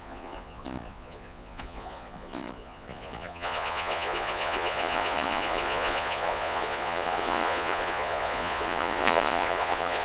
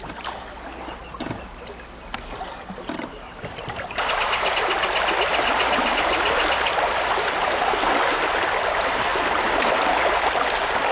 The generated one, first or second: first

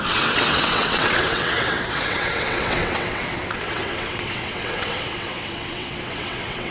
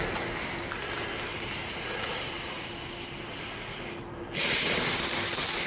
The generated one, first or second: first